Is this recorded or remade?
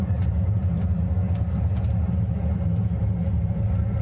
recorded